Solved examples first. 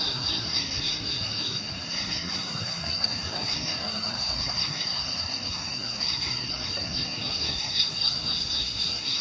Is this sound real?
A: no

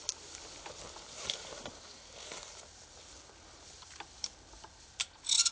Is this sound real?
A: yes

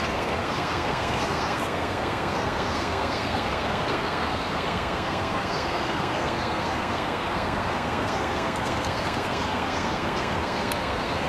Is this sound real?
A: no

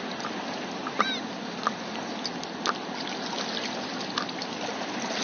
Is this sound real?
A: yes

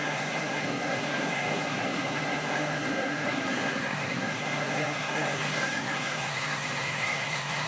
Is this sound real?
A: no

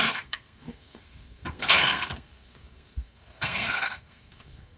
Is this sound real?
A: no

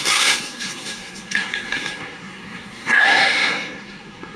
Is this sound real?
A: no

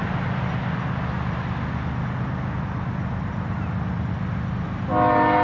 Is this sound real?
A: yes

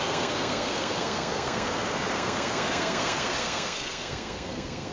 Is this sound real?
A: no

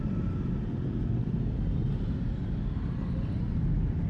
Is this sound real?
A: yes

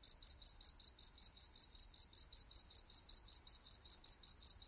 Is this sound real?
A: yes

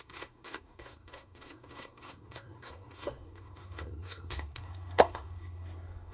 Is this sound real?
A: no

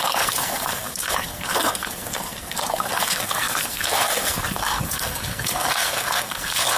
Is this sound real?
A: no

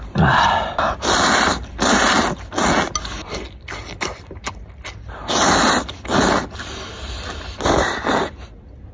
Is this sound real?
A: yes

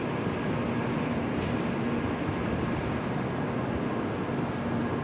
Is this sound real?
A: yes